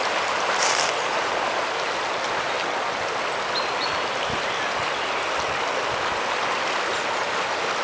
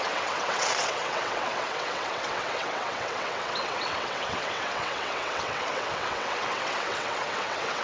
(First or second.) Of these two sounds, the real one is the first